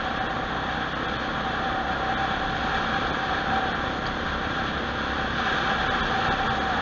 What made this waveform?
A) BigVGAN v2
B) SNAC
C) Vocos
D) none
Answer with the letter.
D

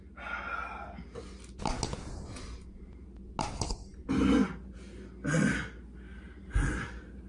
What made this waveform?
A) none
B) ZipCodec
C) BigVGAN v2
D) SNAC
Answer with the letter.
A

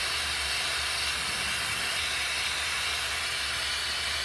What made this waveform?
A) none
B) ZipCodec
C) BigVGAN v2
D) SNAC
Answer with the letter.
A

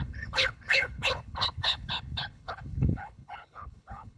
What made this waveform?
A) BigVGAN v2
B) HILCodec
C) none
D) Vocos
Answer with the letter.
B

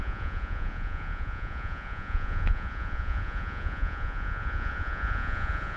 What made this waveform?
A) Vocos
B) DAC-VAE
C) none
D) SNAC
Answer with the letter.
A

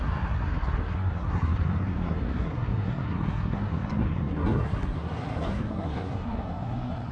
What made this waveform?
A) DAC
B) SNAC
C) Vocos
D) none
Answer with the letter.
B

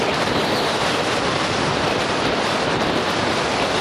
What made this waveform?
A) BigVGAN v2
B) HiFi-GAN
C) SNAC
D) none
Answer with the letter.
A